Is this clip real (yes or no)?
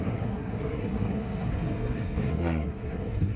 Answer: no